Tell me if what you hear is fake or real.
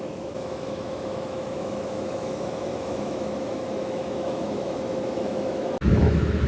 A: fake